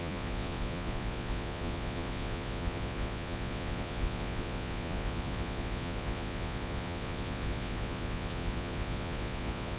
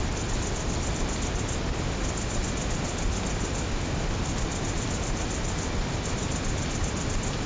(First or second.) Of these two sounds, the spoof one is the first